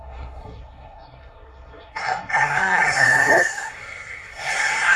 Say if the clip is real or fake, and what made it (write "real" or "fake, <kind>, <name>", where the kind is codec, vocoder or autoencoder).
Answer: fake, codec, SNAC